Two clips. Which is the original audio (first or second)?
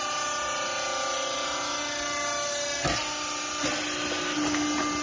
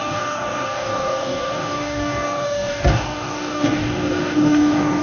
first